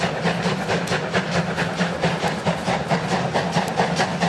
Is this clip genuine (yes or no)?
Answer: yes